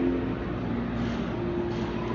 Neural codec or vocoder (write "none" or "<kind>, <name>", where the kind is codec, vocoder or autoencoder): none